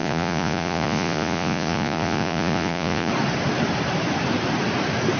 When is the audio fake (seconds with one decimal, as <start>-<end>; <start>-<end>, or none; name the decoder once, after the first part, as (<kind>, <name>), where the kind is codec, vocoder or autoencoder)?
0.0-3.1 (vocoder, Vocos)